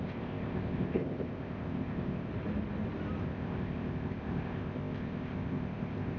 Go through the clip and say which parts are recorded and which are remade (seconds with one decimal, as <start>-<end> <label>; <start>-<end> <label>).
0.0-2.3 remade; 2.3-3.2 recorded; 3.2-6.2 remade